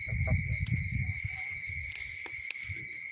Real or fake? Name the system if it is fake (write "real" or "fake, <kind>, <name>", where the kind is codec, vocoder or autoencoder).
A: real